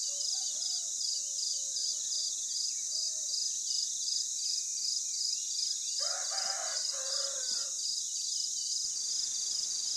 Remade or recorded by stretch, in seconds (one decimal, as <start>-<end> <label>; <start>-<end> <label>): 0.0-10.0 recorded

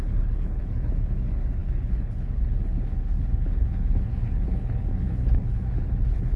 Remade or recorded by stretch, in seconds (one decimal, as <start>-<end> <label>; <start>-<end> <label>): 0.0-6.4 remade